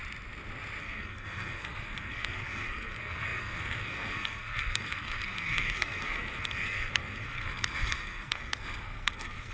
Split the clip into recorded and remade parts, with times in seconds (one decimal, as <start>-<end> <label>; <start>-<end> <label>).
0.0-0.8 recorded; 0.8-9.5 remade